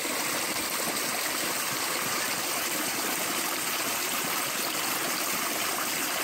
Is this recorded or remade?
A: recorded